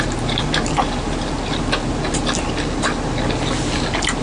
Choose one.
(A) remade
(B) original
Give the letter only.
B